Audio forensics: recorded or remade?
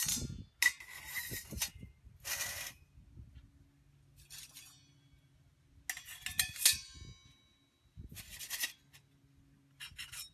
recorded